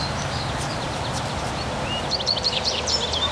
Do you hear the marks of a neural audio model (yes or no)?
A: no